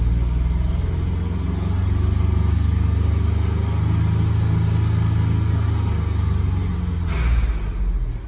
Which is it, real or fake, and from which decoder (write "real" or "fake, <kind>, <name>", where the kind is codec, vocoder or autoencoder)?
real